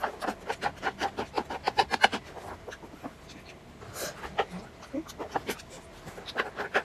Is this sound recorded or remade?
recorded